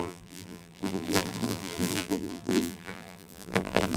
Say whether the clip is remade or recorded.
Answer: remade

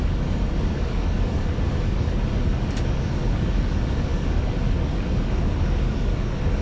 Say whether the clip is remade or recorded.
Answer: remade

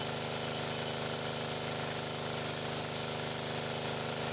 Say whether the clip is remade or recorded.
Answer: recorded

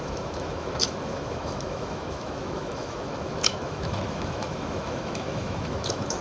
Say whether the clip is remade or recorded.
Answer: remade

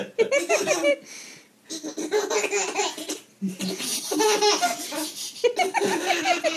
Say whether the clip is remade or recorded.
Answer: recorded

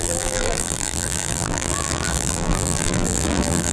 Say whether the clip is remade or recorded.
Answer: remade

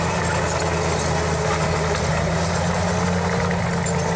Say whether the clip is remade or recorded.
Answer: recorded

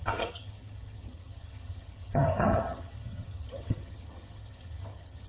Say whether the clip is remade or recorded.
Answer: remade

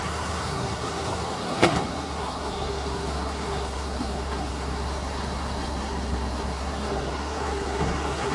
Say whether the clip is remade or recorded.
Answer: remade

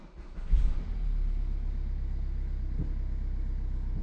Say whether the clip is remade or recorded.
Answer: recorded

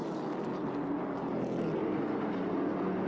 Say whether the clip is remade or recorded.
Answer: recorded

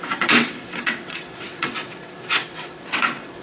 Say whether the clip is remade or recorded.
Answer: remade